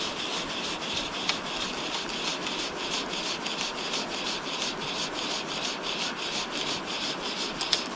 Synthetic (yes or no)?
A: no